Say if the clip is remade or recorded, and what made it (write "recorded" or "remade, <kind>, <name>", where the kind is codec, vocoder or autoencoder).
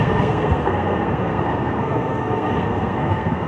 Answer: remade, codec, SNAC